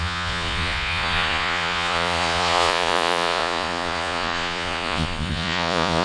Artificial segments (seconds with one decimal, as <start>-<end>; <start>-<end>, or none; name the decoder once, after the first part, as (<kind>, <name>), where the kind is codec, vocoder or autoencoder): 0.0-6.0 (vocoder, Vocos)